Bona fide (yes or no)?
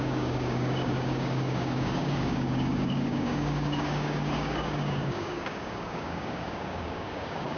no